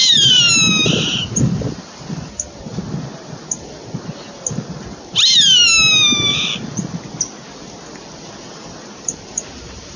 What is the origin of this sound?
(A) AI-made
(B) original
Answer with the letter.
B